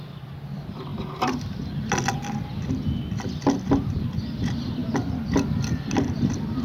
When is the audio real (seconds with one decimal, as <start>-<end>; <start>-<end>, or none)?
0.0-6.6